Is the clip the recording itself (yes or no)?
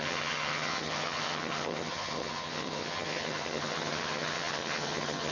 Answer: no